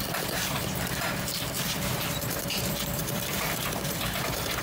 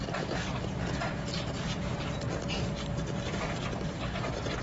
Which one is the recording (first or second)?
second